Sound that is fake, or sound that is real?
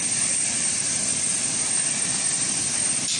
real